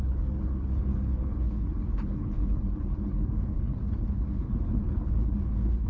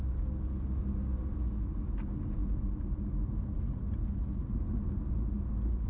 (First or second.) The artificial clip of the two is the first